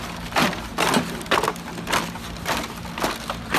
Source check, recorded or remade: recorded